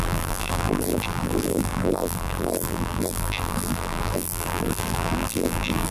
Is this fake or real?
fake